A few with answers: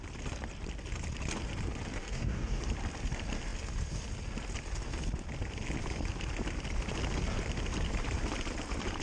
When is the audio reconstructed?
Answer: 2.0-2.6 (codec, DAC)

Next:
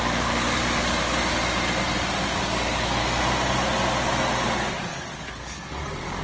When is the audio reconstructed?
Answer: 0.0-1.4 (codec, DAC); 2.4-3.0; 4.7-6.2

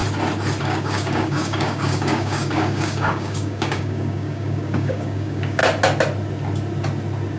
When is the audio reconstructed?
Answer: 0.6-5.6 (codec, DAC)

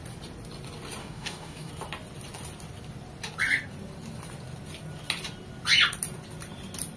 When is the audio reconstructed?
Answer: 1.0-1.7 (codec, DAC)

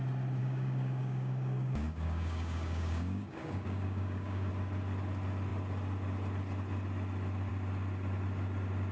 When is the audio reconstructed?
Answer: 0.4-4.5 (codec, DAC)